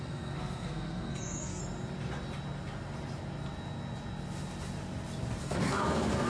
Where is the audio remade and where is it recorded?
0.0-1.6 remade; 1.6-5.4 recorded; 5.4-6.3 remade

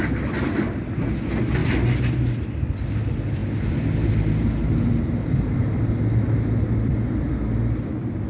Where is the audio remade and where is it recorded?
0.0-8.3 recorded

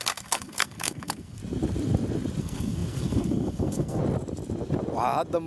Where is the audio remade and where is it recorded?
0.0-1.4 remade; 1.4-2.4 recorded; 2.4-4.0 remade; 4.0-5.5 recorded

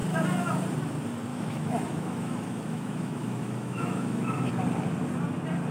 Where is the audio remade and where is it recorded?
0.0-1.3 recorded; 1.3-4.5 remade; 4.5-5.7 recorded

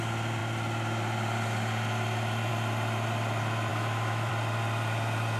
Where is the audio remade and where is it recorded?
0.0-3.7 recorded; 3.7-4.3 remade; 4.3-5.4 recorded

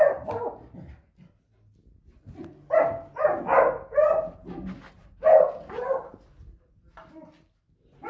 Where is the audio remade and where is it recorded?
0.0-3.5 recorded; 3.5-5.1 remade; 5.1-8.1 recorded

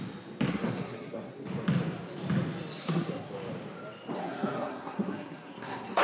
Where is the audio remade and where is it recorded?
0.0-0.5 recorded; 0.5-1.3 remade; 1.3-2.8 recorded; 2.8-3.3 remade; 3.3-4.2 recorded; 4.2-6.0 remade